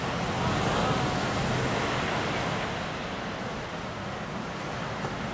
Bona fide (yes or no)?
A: yes